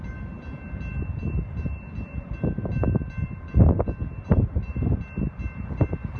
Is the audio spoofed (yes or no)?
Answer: no